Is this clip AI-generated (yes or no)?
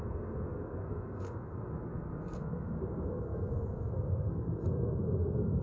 yes